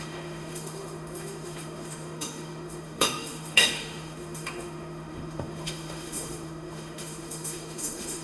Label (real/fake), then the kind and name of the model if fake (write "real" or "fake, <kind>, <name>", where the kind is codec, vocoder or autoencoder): fake, autoencoder, DAC-VAE